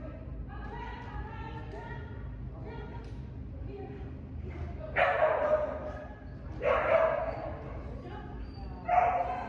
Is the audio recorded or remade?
recorded